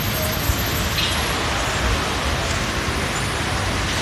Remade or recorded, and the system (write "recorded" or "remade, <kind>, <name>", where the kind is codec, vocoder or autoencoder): recorded